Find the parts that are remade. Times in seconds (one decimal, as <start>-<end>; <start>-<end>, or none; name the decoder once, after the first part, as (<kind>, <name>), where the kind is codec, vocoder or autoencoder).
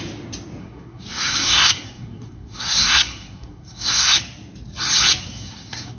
0.6-4.2 (codec, SNAC); 5.2-6.0